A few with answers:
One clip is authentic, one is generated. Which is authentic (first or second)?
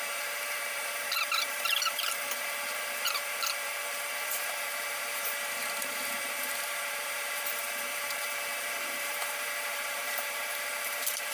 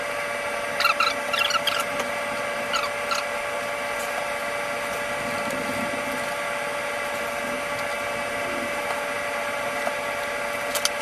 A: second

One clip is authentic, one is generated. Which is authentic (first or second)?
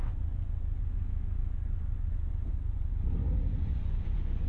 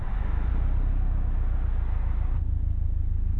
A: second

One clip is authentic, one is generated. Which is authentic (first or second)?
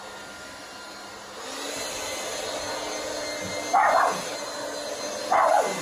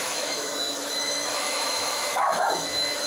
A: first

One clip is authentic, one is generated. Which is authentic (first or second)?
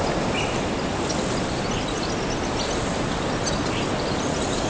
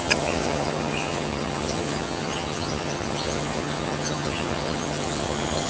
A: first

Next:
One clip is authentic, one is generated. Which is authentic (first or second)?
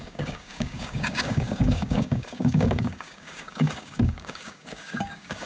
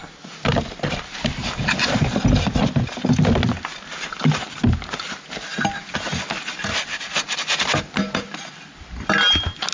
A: second